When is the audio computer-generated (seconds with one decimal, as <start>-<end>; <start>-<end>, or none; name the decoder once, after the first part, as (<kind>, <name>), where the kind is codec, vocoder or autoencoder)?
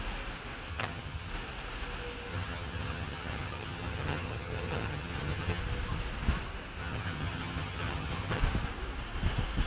0.7-1.3 (vocoder, HiFi-GAN); 2.3-5.6; 6.8-8.4